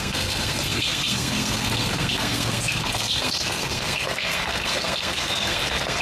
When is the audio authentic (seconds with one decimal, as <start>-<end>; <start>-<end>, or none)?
none

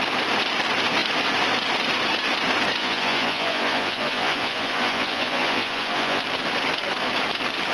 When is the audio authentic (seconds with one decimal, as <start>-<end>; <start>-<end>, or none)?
0.0-2.8; 6.2-7.7

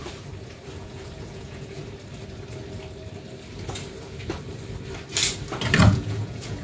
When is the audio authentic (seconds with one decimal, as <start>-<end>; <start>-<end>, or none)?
0.0-0.8; 1.8-5.8

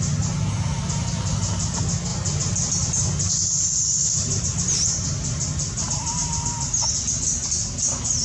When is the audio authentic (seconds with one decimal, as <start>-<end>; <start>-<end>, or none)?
0.0-8.2

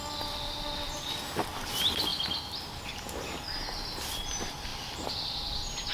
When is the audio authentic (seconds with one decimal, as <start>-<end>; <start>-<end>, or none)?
0.0-4.7

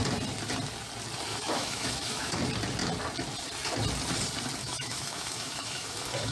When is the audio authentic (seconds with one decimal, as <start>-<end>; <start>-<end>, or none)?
0.0-1.3; 2.4-4.6